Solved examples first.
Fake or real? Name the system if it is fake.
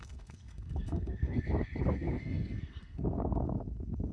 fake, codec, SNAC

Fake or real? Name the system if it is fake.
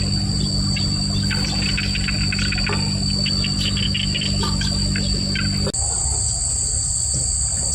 real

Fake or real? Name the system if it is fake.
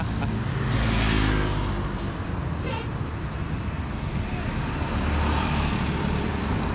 real